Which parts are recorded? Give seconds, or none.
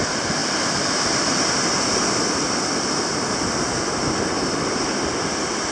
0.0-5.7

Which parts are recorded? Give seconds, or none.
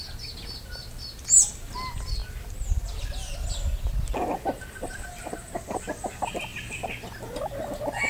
0.0-8.1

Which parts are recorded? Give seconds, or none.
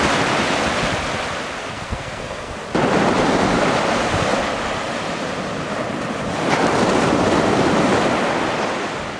0.0-1.6; 2.6-9.2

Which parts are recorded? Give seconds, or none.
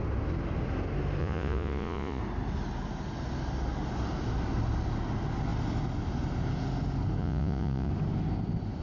0.0-1.2; 2.2-7.2; 7.9-8.8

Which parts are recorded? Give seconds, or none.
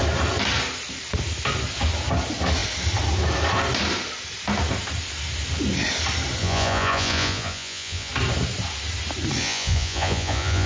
0.0-6.4; 8.1-9.4